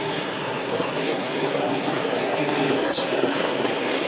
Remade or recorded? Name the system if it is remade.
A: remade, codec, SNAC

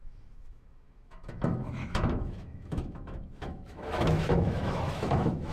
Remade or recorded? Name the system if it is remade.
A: remade, autoencoder, DAC-VAE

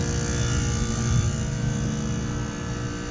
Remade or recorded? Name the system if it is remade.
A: recorded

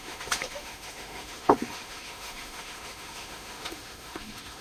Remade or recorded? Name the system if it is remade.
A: remade, autoencoder, DAC-VAE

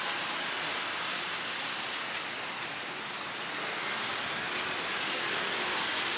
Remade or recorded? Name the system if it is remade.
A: recorded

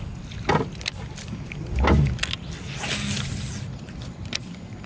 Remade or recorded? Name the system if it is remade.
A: recorded